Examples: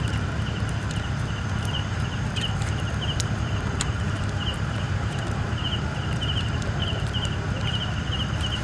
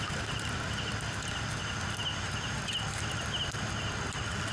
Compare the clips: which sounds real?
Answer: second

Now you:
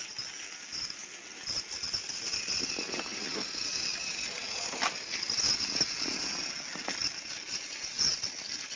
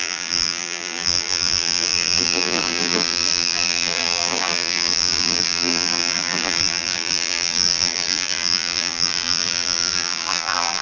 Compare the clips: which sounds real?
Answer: first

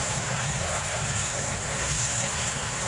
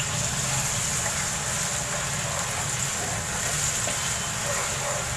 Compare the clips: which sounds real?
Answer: second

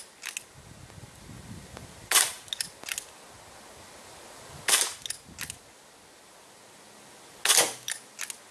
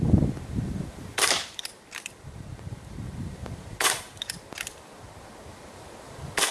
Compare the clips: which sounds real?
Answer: first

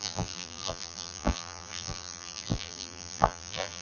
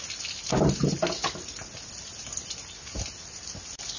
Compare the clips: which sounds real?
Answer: second